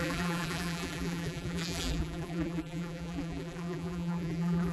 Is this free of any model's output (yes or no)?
no